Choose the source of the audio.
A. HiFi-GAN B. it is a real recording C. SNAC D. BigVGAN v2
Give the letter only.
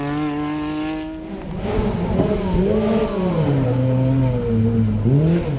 B